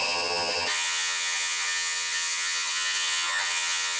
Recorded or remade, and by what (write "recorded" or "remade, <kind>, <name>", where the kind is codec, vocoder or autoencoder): remade, vocoder, HiFi-GAN